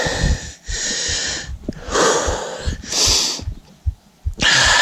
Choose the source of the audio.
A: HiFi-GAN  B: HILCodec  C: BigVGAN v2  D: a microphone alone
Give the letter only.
D